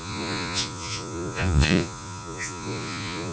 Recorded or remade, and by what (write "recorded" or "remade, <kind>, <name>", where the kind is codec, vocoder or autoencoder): remade, vocoder, Vocos